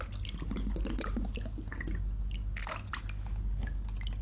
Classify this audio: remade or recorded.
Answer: recorded